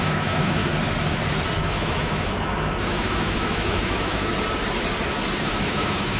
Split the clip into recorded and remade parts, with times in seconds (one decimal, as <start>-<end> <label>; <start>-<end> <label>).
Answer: 0.0-0.6 remade; 0.6-1.6 recorded; 1.6-4.3 remade; 4.3-5.4 recorded; 5.4-6.2 remade